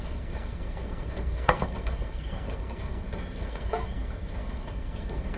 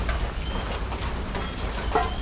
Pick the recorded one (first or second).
second